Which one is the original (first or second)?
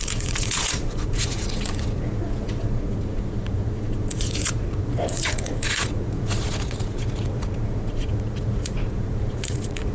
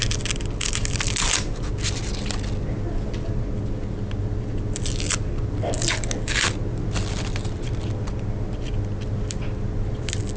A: second